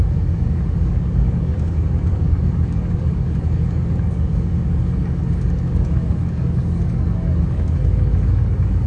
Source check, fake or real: fake